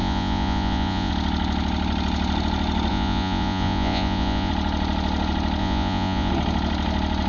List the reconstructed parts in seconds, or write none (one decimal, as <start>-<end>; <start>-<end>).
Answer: 0.0-1.1; 2.9-4.5; 5.6-6.3